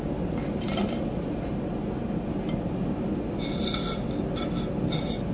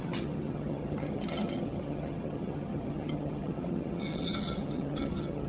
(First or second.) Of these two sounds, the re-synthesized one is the second